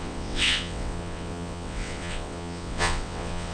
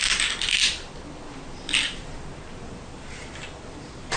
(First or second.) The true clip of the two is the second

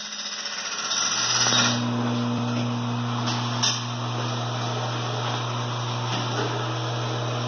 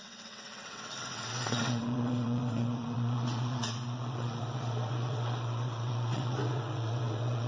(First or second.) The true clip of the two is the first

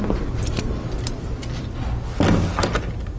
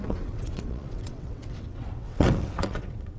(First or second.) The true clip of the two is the first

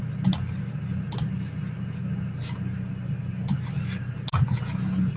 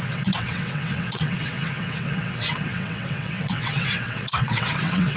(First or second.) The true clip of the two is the first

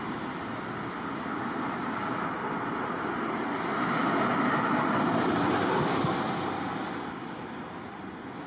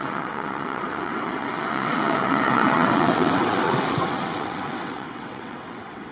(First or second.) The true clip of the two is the first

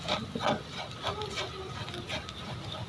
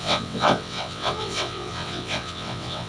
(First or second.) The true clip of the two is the first